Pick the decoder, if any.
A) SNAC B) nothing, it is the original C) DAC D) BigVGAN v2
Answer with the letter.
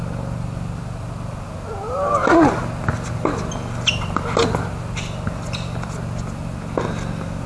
B